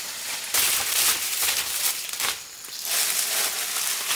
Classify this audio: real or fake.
real